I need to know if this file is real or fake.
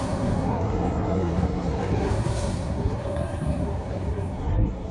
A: fake